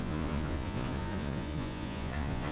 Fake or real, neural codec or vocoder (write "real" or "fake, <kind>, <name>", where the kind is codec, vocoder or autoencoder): fake, vocoder, Vocos